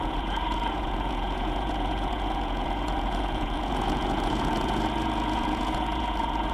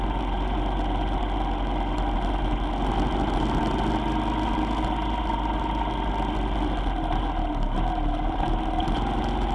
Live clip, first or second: second